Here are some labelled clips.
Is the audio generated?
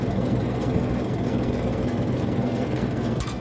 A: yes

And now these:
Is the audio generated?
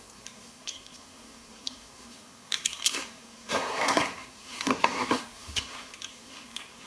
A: yes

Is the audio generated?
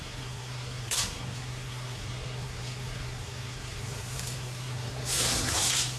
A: yes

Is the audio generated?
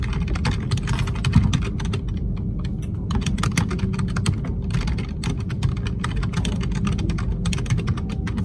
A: no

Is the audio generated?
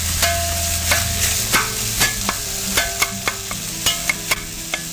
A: no